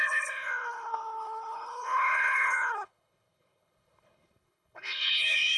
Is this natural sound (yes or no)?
no